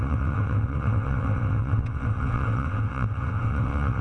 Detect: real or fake fake